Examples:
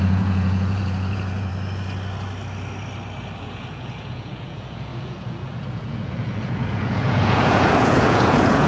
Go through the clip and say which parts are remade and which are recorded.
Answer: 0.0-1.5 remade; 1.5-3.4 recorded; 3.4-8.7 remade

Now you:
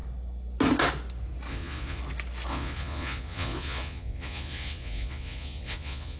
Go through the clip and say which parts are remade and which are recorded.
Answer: 0.0-1.5 recorded; 1.5-2.0 remade; 2.0-2.5 recorded; 2.5-6.2 remade

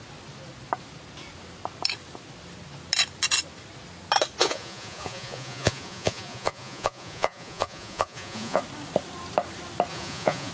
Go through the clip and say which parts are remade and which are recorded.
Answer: 0.0-4.4 recorded; 4.4-8.6 remade; 8.6-9.9 recorded; 9.9-10.5 remade

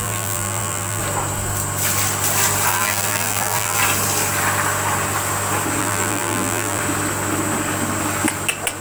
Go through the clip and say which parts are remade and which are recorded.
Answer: 0.0-1.0 remade; 1.0-2.7 recorded; 2.7-3.8 remade; 3.8-5.8 recorded; 5.8-6.8 remade; 6.8-8.8 recorded

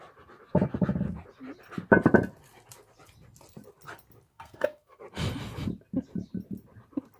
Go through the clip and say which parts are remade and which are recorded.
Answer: 0.0-4.3 recorded; 4.3-5.0 remade; 5.0-7.2 recorded

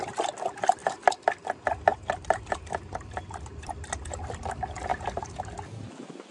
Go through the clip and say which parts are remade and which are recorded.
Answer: 0.0-1.9 recorded; 1.9-4.2 remade; 4.2-4.9 recorded; 4.9-5.4 remade; 5.4-6.3 recorded